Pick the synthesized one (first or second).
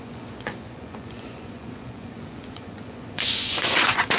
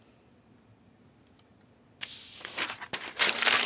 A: first